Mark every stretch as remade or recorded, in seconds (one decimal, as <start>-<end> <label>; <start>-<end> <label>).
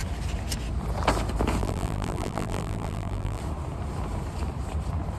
0.0-1.6 recorded; 1.6-3.4 remade; 3.4-5.2 recorded